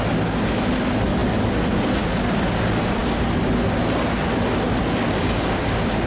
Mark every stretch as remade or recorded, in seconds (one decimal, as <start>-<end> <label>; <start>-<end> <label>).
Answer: 0.0-6.1 recorded